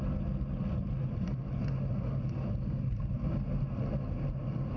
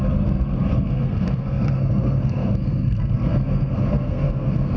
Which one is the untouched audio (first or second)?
first